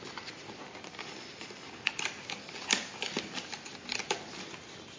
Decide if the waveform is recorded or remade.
recorded